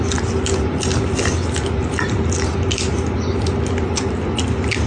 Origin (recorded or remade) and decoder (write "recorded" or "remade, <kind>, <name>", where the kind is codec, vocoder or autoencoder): recorded